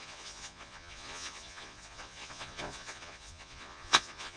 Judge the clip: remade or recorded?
remade